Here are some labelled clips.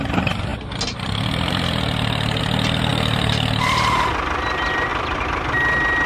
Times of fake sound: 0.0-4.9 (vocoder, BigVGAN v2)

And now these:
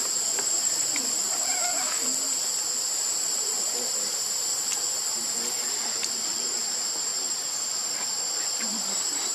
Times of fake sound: 0.0-1.6 (vocoder, BigVGAN v2); 3.5-4.5; 5.7-7.1; 8.2-9.3

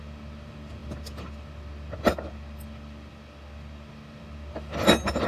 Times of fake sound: none